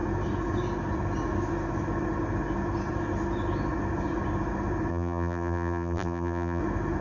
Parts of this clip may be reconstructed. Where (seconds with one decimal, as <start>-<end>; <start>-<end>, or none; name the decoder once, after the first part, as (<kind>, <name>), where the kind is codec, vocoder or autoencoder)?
4.9-6.6 (vocoder, BigVGAN v2)